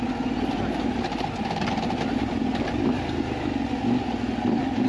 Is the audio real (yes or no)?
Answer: yes